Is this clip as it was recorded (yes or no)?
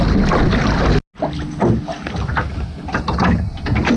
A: yes